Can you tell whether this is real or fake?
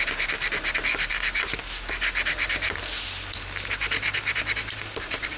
real